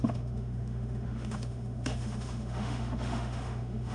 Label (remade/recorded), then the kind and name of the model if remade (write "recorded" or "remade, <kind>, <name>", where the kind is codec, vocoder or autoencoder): remade, autoencoder, DAC-VAE